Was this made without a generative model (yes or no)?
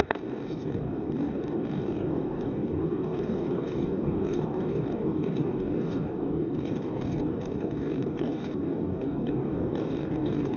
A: no